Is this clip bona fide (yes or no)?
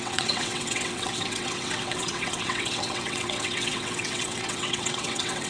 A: no